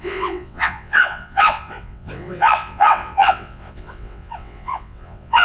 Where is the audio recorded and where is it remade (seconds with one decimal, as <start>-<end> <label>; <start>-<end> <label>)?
0.0-5.4 remade